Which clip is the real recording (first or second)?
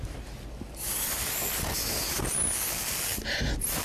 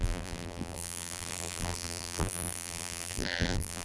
first